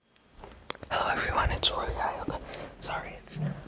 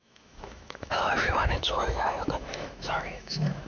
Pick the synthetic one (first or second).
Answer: second